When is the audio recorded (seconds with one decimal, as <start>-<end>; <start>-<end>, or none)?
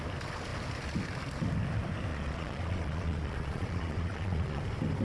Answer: 0.0-2.1; 4.6-5.0